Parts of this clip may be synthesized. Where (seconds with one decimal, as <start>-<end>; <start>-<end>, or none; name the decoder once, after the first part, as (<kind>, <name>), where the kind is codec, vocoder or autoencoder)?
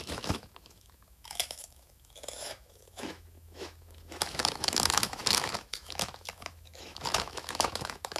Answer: 0.0-8.2 (autoencoder, DAC-VAE)